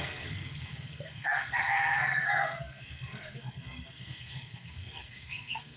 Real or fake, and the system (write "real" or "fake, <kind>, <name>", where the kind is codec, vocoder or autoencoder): fake, codec, SNAC